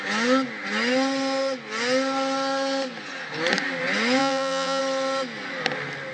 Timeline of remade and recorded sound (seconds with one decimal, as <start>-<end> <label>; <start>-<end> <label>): 0.0-4.2 recorded; 4.2-4.8 remade; 4.8-6.1 recorded